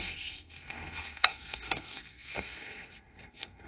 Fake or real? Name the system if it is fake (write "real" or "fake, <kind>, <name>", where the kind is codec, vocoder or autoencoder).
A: fake, codec, SNAC